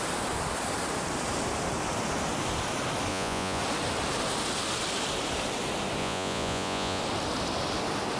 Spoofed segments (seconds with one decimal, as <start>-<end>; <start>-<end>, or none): 3.1-3.6; 6.0-7.0